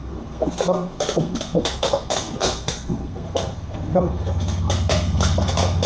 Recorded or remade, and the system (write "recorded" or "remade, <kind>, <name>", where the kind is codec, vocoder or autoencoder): remade, codec, SNAC